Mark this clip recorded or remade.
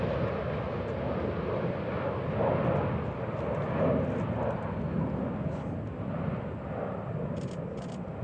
recorded